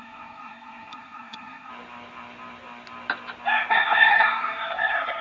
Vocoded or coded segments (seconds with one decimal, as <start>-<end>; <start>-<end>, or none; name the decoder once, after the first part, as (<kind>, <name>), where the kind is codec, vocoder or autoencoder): 0.0-1.7 (codec, SNAC); 3.7-5.2

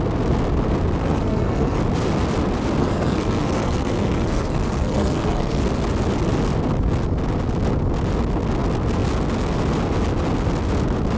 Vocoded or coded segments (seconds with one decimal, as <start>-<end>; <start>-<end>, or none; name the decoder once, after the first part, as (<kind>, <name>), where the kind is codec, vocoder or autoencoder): 1.0-1.8 (codec, SNAC); 2.8-5.6

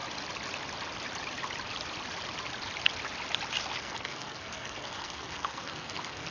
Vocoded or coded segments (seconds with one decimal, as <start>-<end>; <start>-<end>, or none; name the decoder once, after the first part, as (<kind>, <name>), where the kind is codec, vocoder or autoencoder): 3.8-6.3 (codec, SNAC)

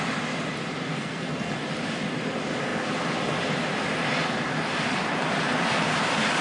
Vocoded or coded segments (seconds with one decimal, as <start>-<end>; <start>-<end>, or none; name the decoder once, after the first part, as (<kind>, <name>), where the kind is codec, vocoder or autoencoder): 0.9-1.6 (codec, SNAC)

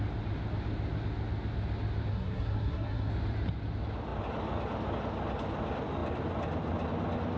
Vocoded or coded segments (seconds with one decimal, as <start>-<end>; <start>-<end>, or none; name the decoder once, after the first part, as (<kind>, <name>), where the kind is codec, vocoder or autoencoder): 2.1-3.1 (codec, SNAC)

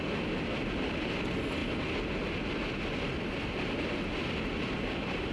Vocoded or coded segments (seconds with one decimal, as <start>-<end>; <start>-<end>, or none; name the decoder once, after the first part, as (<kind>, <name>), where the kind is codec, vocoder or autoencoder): none

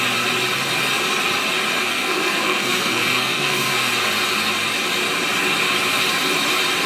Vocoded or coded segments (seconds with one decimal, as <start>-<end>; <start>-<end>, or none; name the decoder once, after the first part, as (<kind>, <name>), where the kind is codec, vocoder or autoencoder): 1.8-3.9 (codec, SNAC)

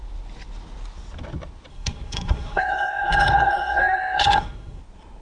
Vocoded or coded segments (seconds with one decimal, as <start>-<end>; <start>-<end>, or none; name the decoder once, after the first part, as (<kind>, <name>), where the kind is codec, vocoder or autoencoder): 1.7-4.8 (codec, SNAC)